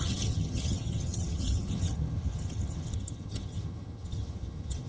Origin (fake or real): fake